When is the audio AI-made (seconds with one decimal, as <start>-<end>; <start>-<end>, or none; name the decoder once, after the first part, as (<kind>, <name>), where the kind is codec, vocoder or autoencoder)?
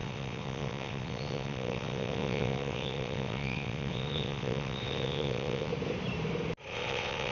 0.0-5.7 (vocoder, WaveNeXt); 6.7-7.3